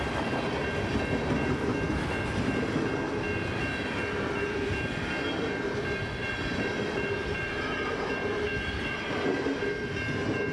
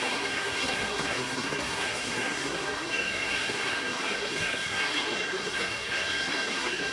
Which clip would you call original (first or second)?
first